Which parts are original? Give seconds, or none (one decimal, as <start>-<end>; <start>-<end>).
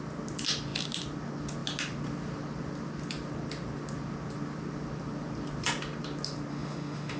0.0-6.5